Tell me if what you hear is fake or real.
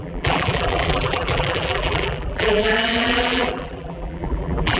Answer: fake